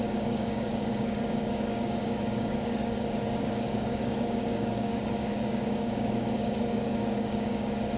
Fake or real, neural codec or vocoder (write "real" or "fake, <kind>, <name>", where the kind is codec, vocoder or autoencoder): fake, codec, DAC